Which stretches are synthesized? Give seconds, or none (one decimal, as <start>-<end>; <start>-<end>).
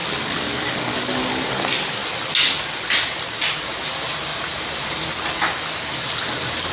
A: 0.0-1.6